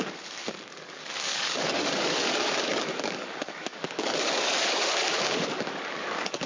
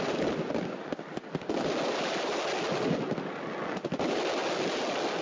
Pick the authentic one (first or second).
second